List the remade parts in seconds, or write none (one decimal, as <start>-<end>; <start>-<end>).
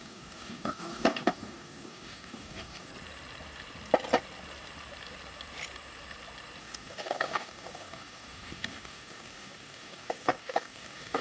0.0-2.9; 6.6-11.2